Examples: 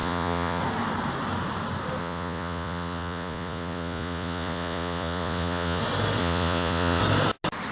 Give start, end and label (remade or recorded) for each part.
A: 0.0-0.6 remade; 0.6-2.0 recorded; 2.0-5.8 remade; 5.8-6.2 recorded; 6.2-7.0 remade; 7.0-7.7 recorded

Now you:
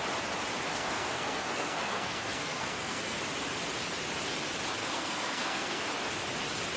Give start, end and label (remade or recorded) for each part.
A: 0.0-0.7 recorded; 0.7-3.2 remade; 3.2-4.8 recorded; 4.8-5.8 remade; 5.8-6.8 recorded

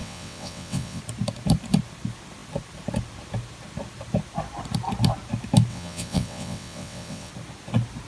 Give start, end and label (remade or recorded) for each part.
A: 0.0-1.0 remade; 1.0-5.7 recorded; 5.7-7.3 remade; 7.3-8.1 recorded

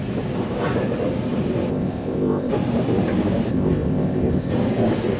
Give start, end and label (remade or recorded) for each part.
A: 0.0-1.7 recorded; 1.7-2.5 remade; 2.5-3.5 recorded; 3.5-4.5 remade; 4.5-5.2 recorded

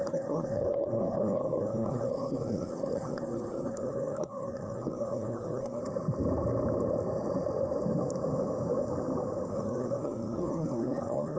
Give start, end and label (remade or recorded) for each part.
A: 0.0-5.8 remade; 5.8-9.5 recorded; 9.5-11.4 remade

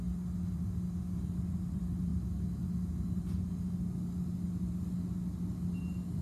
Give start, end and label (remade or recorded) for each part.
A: 0.0-6.2 recorded